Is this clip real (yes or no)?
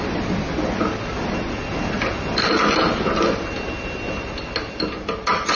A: yes